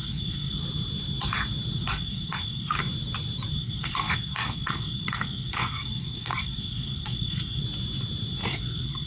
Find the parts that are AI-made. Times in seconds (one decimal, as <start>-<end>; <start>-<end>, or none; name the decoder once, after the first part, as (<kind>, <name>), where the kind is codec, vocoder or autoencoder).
0.0-0.6 (codec, SNAC); 1.9-2.8; 3.5-7.6; 8.5-9.1